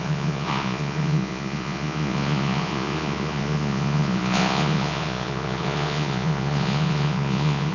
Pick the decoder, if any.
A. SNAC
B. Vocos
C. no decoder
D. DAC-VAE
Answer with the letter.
B